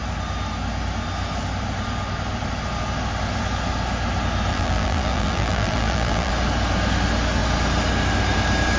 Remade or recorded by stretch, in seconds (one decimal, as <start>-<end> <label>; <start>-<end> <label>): 0.0-4.5 recorded; 4.5-6.3 remade; 6.3-8.8 recorded